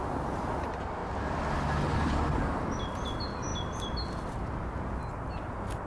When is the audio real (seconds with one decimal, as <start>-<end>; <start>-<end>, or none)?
0.0-5.9